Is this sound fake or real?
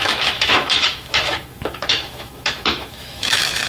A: fake